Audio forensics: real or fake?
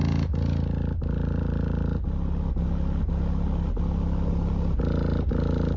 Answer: real